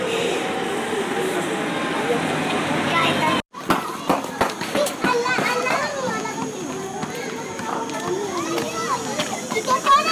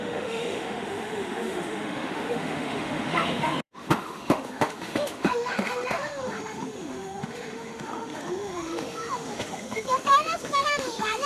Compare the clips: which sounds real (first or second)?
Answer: first